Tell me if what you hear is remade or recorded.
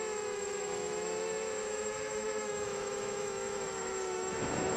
remade